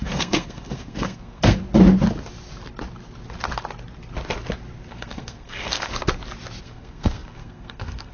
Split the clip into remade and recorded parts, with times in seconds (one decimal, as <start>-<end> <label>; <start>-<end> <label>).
0.0-1.6 remade; 1.6-4.9 recorded; 4.9-5.9 remade; 5.9-6.6 recorded; 6.6-8.1 remade